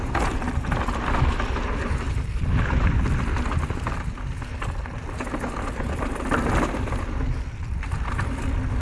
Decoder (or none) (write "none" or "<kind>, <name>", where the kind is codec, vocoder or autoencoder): none